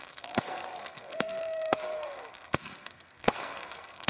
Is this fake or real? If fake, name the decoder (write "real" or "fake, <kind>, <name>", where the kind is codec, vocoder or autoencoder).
fake, codec, SNAC